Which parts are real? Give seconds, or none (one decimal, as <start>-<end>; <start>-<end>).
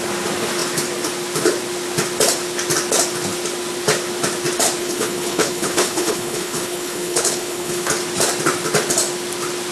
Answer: 0.0-4.8; 7.9-9.7